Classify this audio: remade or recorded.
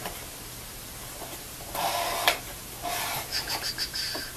remade